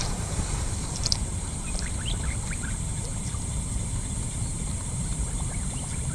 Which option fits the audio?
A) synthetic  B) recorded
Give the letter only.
A